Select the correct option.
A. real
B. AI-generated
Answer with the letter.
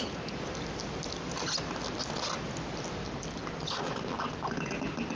A